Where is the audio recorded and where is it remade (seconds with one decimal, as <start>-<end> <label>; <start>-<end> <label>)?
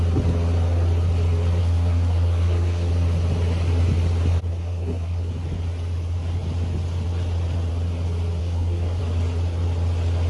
0.0-1.6 recorded; 1.6-2.9 remade; 2.9-4.5 recorded; 4.5-5.3 remade; 5.3-8.4 recorded; 8.4-9.0 remade; 9.0-10.3 recorded